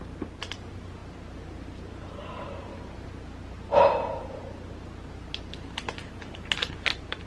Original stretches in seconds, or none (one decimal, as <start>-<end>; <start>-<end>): 1.0-1.9; 2.7-6.7